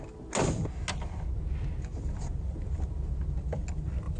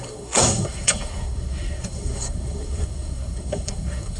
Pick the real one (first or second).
first